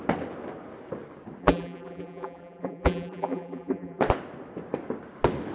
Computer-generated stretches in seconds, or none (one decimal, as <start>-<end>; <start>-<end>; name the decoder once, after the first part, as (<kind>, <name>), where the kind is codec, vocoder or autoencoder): 1.4-4.0 (vocoder, BigVGAN v2)

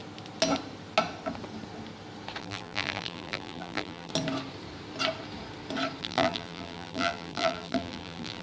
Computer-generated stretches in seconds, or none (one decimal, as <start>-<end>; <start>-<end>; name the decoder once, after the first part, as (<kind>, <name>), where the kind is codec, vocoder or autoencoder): 2.4-4.1 (vocoder, BigVGAN v2); 6.0-8.4

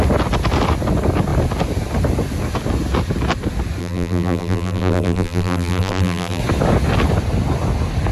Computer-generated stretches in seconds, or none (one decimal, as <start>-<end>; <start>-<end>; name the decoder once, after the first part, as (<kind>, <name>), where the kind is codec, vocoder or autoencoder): 3.8-6.4 (vocoder, BigVGAN v2)

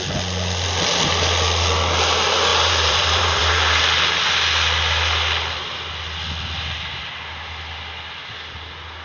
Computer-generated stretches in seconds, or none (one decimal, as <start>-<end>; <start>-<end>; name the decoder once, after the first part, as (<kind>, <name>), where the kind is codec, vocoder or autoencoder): 2.5-3.8 (vocoder, BigVGAN v2)